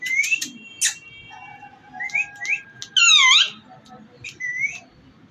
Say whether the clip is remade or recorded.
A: recorded